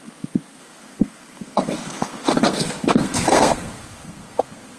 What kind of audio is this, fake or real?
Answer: fake